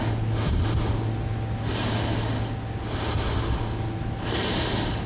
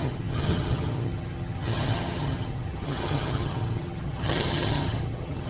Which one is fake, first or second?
second